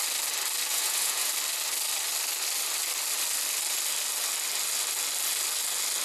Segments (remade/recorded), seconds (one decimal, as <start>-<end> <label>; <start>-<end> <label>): 0.0-0.7 recorded; 0.7-1.3 remade; 1.3-6.0 recorded